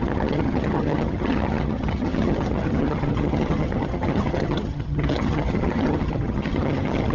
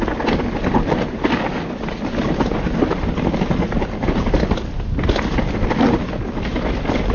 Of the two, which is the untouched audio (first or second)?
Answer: second